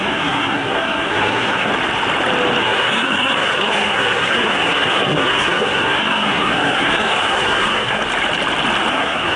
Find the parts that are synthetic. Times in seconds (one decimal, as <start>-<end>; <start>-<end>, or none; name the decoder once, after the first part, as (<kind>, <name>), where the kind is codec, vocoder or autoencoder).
0.0-1.7 (codec, SNAC); 2.6-8.0; 8.9-9.4